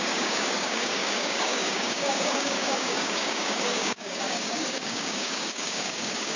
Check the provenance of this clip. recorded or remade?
remade